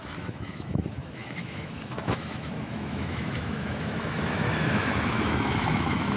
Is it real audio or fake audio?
fake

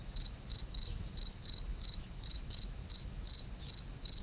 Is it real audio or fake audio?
fake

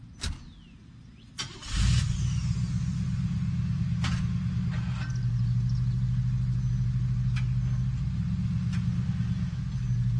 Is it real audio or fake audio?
real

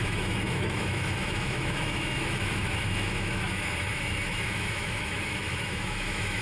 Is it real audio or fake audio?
fake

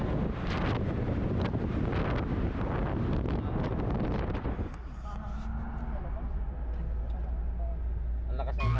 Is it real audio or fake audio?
real